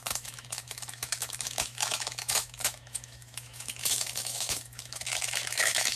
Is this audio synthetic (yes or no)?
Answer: yes